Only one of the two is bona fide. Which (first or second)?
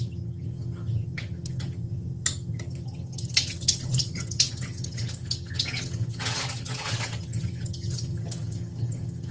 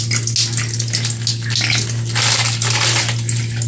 second